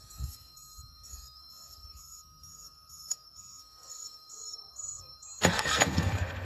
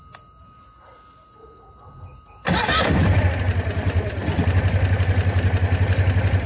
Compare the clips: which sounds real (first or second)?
second